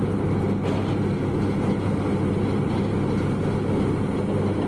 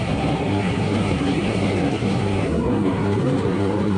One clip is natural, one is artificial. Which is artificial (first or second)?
second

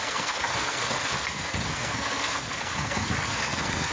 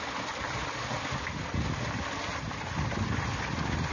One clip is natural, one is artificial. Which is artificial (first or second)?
first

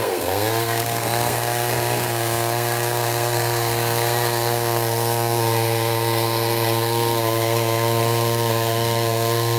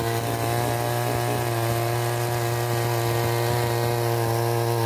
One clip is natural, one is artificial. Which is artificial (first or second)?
first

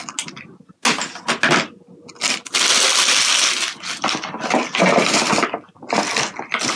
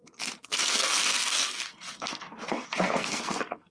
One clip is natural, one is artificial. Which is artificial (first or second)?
second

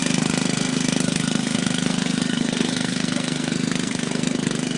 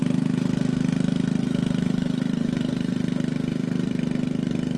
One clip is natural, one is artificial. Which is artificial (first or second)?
first